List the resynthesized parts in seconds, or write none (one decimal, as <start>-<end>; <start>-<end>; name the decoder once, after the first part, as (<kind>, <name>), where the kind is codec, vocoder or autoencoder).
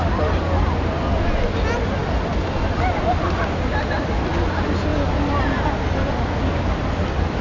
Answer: none